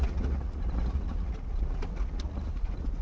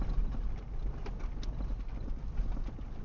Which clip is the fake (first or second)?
first